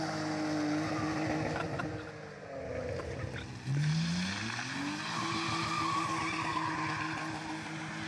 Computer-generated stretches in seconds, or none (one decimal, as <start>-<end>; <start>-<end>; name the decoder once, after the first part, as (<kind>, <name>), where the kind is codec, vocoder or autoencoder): none